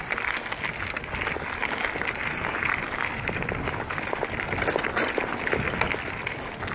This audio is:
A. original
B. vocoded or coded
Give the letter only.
A